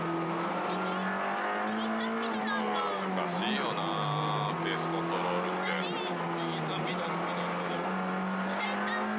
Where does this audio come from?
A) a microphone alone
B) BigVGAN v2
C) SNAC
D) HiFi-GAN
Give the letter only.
A